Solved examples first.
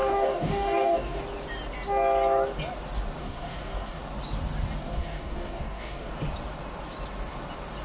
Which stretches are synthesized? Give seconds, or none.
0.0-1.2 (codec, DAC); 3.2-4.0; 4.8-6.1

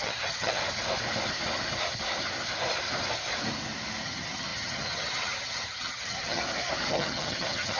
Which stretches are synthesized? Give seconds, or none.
0.0-0.6 (vocoder, HiFi-GAN); 4.0-6.4; 6.9-7.8

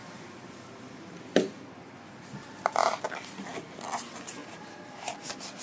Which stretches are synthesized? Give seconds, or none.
0.0-3.4 (vocoder, BigVGAN v2); 4.4-5.1